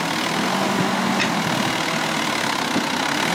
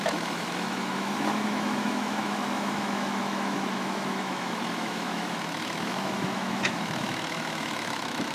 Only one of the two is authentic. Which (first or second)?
first